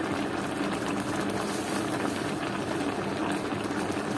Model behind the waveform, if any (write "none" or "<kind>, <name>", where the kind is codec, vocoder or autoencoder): none